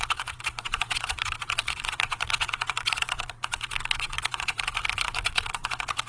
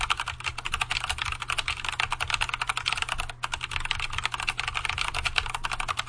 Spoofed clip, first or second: first